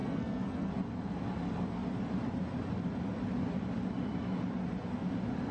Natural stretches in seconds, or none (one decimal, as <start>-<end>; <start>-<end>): 0.7-5.5